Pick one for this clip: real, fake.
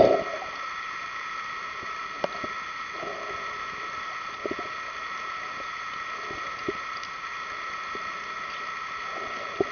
real